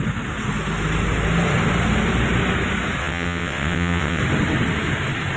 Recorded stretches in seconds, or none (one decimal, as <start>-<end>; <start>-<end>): 0.0-3.0; 4.2-5.4